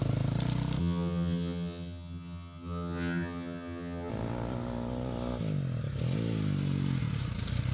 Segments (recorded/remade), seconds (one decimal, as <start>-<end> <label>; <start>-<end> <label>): 0.0-0.8 recorded; 0.8-4.1 remade; 4.1-7.7 recorded